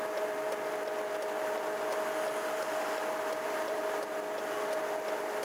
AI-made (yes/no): no